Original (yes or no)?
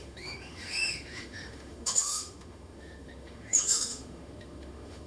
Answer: no